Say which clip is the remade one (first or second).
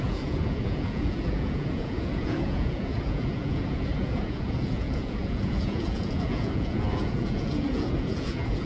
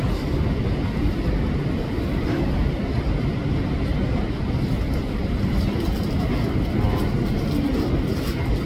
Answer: first